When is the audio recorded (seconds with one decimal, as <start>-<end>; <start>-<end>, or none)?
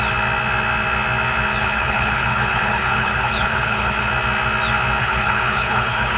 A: 0.0-1.6; 4.1-5.0